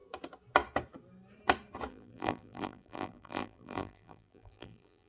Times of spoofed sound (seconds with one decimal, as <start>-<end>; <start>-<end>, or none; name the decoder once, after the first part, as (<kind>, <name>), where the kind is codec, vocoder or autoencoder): 1.9-5.1 (vocoder, BigVGAN v2)